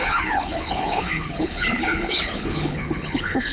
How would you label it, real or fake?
fake